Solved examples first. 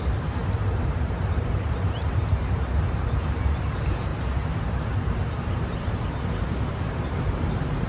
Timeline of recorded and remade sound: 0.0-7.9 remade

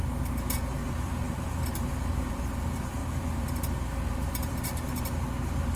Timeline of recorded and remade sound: 0.0-0.8 recorded; 0.8-2.4 remade; 2.4-3.0 recorded; 3.0-4.5 remade; 4.5-5.8 recorded

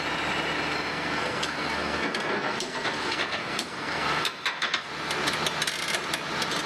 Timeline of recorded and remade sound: 0.0-0.9 recorded; 0.9-4.9 remade; 4.9-6.7 recorded

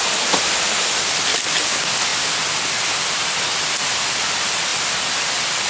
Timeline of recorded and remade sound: 0.0-5.7 recorded